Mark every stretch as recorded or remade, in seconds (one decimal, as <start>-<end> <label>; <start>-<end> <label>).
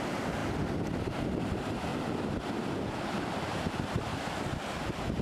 0.0-0.4 remade; 0.4-1.4 recorded; 1.4-1.9 remade; 1.9-3.5 recorded; 3.5-4.1 remade; 4.1-4.8 recorded; 4.8-5.2 remade